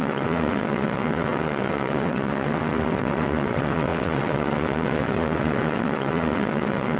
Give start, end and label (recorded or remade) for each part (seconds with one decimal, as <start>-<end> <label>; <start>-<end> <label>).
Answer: 0.0-7.0 remade